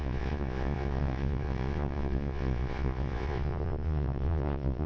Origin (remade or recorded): remade